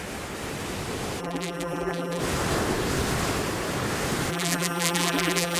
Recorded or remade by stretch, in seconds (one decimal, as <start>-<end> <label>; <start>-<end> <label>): 0.0-1.2 recorded; 1.2-2.2 remade; 2.2-4.3 recorded; 4.3-5.6 remade